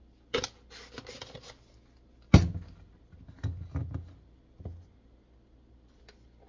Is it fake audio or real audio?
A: real